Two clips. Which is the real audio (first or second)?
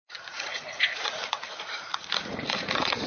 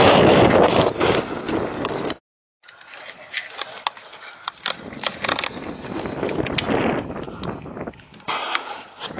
second